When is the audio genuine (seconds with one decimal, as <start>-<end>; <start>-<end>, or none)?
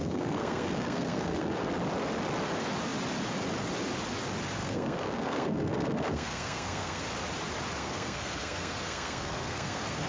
1.7-4.6; 7.0-7.8